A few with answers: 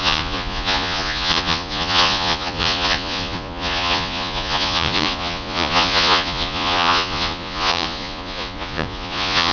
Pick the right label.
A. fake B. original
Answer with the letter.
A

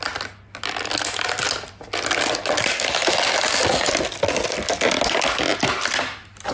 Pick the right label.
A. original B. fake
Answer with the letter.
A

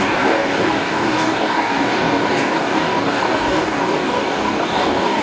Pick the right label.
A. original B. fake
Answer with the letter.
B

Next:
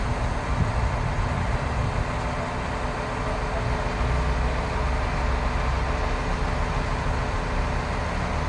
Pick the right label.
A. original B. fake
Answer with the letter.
A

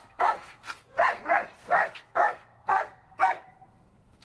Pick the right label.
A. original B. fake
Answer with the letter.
B